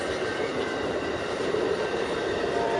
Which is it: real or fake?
fake